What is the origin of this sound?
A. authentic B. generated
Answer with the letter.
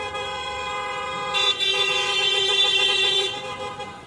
B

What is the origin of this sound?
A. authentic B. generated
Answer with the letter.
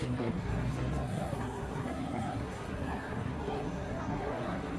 B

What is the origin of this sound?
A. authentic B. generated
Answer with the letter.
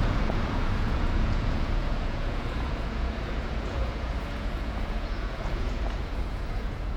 B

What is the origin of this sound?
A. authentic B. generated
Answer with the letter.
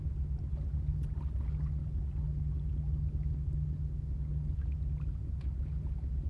A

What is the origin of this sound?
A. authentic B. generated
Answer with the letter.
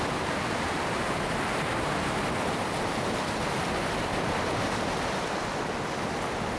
A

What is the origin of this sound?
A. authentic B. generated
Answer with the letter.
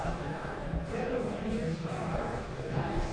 B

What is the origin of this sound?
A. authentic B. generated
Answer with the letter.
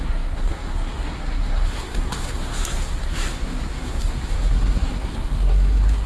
B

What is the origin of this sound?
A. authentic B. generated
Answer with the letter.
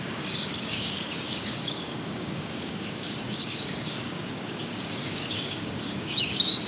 B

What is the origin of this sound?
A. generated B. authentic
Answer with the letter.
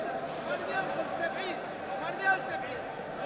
B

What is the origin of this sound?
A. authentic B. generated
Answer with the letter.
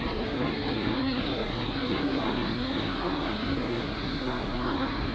B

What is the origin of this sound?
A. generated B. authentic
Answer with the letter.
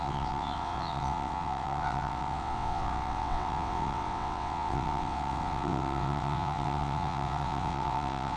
A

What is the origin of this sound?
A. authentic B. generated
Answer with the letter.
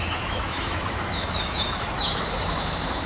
B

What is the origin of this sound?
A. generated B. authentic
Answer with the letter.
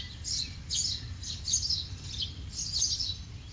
B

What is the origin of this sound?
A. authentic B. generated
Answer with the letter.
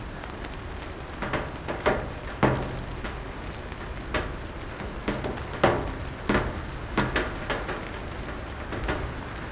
A